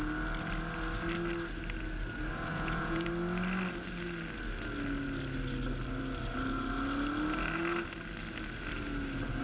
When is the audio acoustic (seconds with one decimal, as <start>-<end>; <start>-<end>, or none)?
0.0-2.5; 3.1-9.4